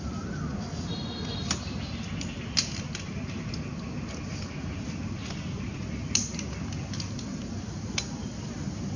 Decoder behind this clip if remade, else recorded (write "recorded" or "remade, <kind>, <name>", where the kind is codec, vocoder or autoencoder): recorded